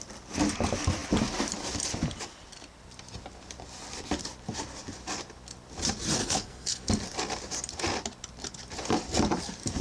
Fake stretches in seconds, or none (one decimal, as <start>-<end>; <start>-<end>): 6.2-6.9